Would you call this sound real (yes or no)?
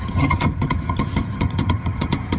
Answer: no